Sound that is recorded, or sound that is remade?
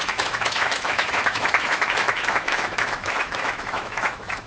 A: remade